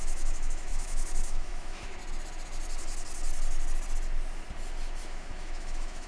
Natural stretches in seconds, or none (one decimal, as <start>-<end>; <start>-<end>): 2.0-5.0